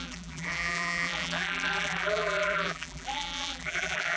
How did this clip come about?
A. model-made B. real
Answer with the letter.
A